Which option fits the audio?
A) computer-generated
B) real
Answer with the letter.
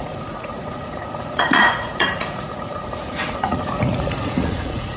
A